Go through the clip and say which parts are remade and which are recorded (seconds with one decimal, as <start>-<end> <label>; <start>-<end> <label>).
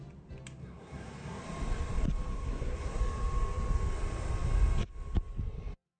0.0-0.6 recorded; 0.6-1.4 remade; 1.4-2.3 recorded; 2.3-3.0 remade; 3.0-6.0 recorded